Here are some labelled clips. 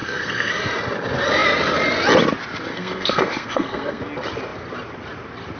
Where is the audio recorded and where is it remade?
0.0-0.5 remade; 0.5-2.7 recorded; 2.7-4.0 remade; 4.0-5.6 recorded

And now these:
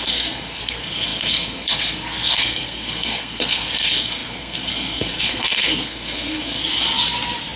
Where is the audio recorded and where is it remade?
0.0-6.6 remade; 6.6-7.6 recorded

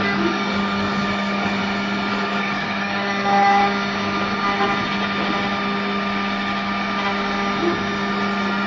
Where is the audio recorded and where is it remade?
0.0-1.6 remade; 1.6-2.1 recorded; 2.1-3.6 remade; 3.6-8.7 recorded